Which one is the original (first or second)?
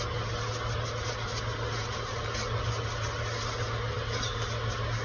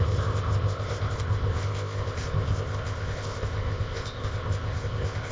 first